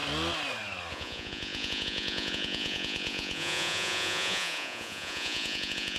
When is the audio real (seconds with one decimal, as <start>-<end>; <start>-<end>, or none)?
0.0-0.9